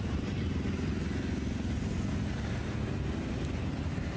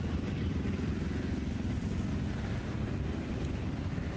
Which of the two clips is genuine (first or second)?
first